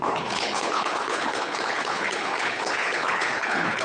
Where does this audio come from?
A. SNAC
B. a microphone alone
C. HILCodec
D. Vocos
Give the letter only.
C